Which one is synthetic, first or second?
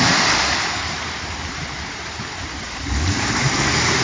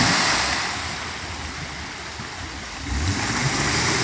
first